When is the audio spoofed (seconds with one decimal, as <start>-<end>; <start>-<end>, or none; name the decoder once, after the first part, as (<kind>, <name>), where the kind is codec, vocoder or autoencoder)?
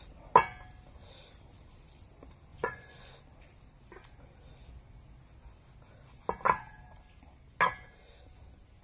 2.5-3.1 (vocoder, Vocos)